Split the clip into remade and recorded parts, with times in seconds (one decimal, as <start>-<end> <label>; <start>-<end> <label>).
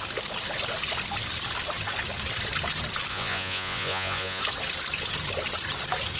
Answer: 0.0-3.1 recorded; 3.1-4.4 remade; 4.4-6.2 recorded